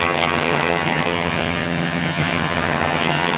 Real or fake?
fake